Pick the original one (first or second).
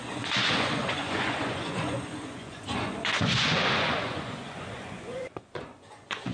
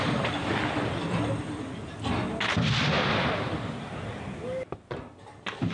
second